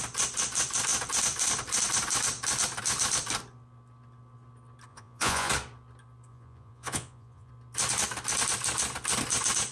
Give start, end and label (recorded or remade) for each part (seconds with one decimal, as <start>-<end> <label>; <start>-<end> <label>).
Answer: 0.0-4.9 recorded; 4.9-5.5 remade; 5.5-6.3 recorded; 6.3-7.5 remade; 7.5-9.7 recorded